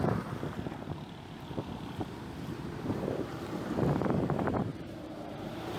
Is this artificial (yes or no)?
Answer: yes